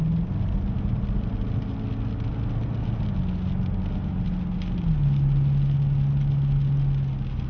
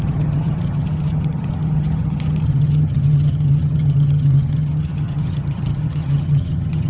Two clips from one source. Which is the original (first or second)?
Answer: first